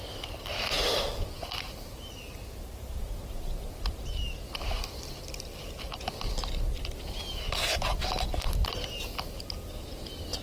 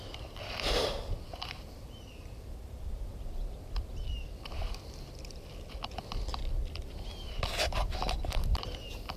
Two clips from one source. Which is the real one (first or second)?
first